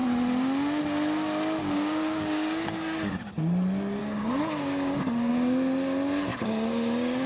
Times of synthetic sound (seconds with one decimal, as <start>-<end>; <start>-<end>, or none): 1.6-3.1; 4.0-5.3; 6.3-7.3